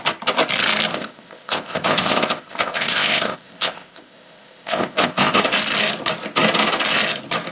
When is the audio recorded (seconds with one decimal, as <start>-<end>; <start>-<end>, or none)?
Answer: 0.0-0.9; 5.4-7.5